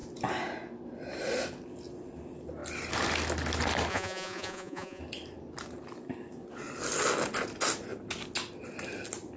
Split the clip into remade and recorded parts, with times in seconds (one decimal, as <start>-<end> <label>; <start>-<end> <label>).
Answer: 0.0-3.9 recorded; 3.9-5.0 remade; 5.0-9.4 recorded